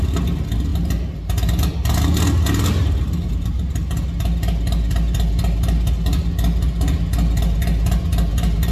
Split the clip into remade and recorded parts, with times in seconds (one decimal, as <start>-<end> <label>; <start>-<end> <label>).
0.0-2.8 recorded; 2.8-3.9 remade; 3.9-8.7 recorded